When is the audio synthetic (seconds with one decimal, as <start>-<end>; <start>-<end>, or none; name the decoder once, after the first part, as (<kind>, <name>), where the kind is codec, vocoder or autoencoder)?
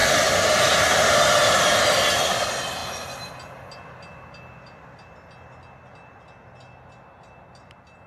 none